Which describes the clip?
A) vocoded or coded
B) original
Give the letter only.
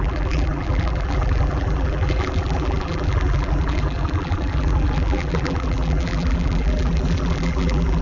A